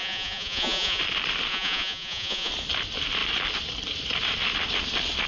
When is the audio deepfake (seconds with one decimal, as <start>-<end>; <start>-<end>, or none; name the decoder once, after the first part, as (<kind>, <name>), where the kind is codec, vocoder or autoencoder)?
0.0-1.0 (vocoder, Vocos); 1.5-2.5